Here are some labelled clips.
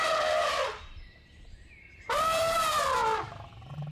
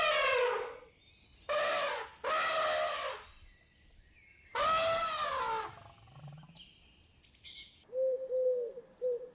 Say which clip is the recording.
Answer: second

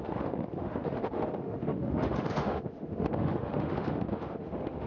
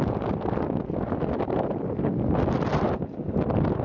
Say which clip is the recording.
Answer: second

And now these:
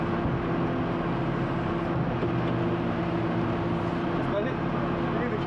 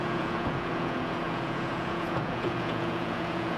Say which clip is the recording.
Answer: first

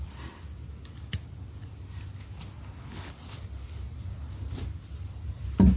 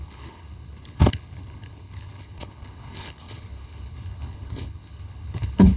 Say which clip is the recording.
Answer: first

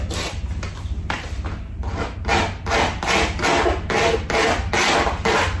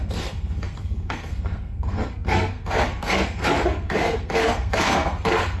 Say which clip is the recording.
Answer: first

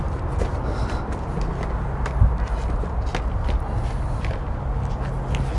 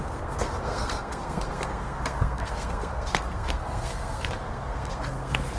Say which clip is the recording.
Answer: first